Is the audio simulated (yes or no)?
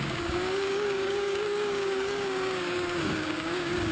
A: yes